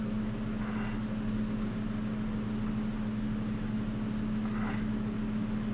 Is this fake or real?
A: real